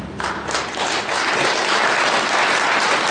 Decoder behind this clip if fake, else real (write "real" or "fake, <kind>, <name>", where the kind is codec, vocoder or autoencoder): real